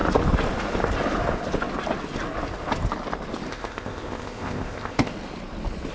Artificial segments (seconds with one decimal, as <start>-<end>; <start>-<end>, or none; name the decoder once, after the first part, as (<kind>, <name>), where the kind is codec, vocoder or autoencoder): 3.5-5.1 (codec, ZipCodec)